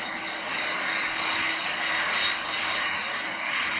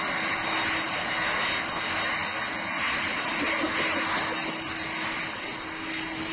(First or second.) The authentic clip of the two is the second